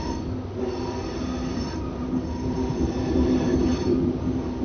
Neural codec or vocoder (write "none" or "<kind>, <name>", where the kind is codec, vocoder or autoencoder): none